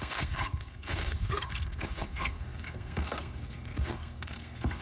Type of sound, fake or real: fake